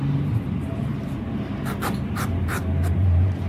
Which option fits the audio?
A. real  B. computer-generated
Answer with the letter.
B